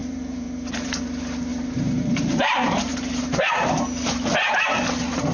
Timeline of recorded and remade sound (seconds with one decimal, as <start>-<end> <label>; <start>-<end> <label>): 0.0-1.0 remade; 1.0-1.5 recorded; 1.5-4.7 remade; 4.7-5.3 recorded